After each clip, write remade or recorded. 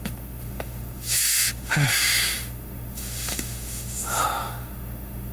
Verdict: remade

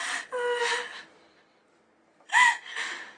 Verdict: recorded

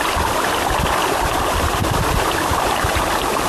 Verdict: remade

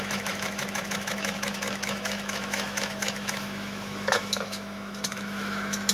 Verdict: remade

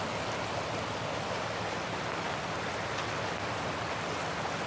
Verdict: recorded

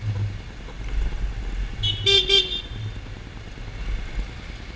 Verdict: recorded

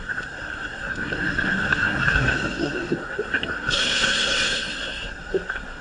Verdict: remade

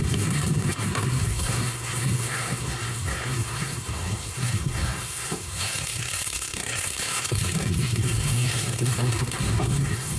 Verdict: remade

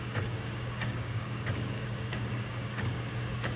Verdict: remade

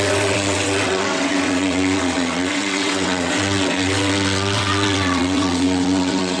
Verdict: remade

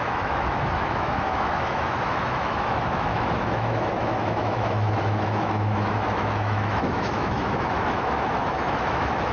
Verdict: remade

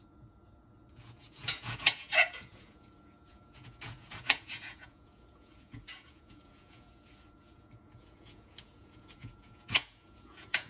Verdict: remade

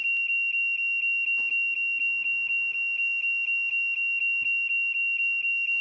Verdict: recorded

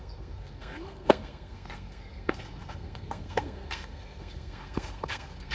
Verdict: remade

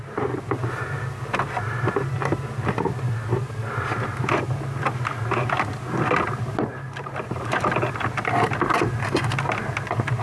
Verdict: recorded